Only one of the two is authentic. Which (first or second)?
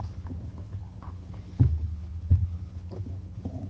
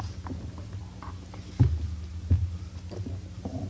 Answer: second